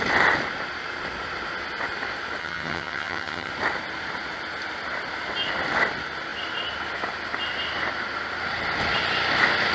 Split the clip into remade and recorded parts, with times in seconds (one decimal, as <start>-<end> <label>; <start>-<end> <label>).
0.0-2.4 recorded; 2.4-3.5 remade; 3.5-9.7 recorded